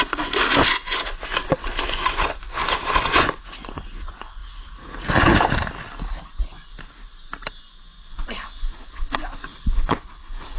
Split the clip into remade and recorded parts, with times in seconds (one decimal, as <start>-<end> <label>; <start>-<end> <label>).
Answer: 0.0-4.4 remade; 4.4-6.2 recorded; 6.2-6.7 remade; 6.7-7.6 recorded; 7.6-10.6 remade